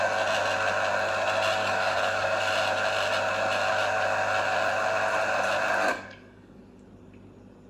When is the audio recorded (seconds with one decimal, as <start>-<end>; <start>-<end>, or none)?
0.0-1.6; 2.5-5.9; 6.6-7.7